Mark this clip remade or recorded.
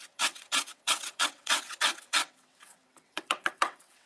remade